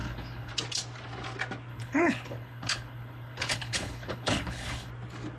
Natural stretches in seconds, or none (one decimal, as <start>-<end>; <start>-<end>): 0.5-1.7; 4.9-5.4